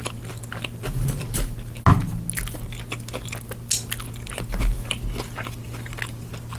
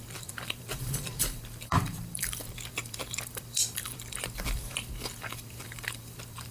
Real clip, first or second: first